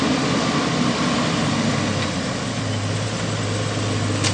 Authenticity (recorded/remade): recorded